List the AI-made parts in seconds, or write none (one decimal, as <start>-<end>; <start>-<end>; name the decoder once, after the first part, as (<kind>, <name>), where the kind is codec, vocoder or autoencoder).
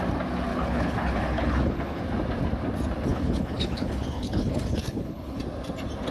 0.5-2.0 (codec, HILCodec); 3.1-5.4